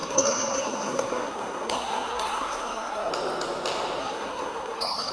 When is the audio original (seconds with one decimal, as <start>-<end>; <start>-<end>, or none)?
3.1-4.0